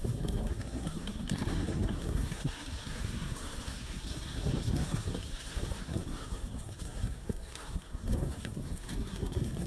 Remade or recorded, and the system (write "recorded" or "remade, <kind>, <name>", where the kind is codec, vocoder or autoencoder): remade, codec, SNAC